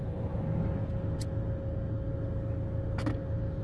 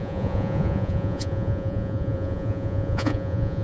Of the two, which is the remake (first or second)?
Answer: second